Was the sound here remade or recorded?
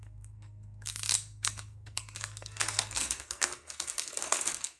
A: remade